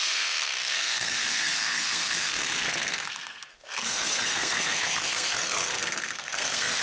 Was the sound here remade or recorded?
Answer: remade